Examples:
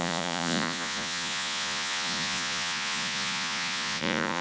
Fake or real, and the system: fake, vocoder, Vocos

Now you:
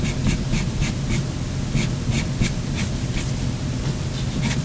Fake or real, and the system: real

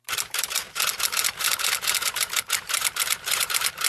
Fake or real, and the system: fake, vocoder, BigVGAN v2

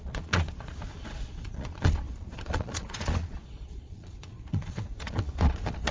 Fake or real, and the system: fake, vocoder, Vocos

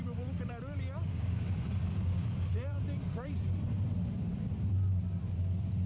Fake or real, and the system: fake, vocoder, BigVGAN v2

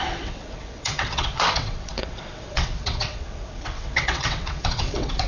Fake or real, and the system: fake, vocoder, WaveNeXt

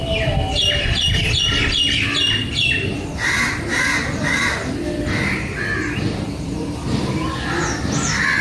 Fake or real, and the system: real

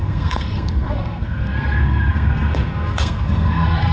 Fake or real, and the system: fake, codec, SNAC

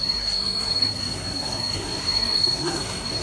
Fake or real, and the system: fake, codec, SNAC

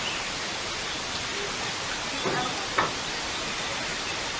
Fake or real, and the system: real